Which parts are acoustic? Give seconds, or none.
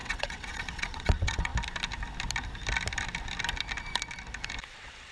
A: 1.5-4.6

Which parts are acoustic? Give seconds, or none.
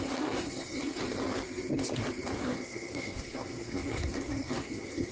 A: 1.0-2.4